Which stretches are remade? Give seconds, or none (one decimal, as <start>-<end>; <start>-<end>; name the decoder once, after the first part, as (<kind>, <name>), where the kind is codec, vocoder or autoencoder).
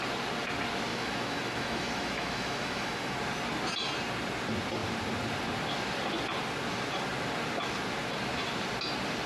0.9-3.2 (autoencoder, DAC-VAE)